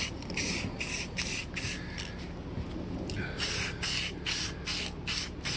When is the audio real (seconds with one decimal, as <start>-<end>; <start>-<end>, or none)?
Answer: 0.0-5.6